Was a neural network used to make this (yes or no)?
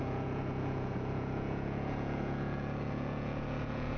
yes